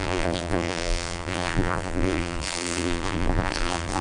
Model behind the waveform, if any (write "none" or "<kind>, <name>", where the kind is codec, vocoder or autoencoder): vocoder, BigVGAN v2